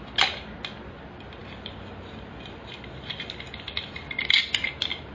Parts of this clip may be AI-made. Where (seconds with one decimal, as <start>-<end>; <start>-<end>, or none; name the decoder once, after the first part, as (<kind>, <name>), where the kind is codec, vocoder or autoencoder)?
1.4-4.5 (vocoder, BigVGAN v2)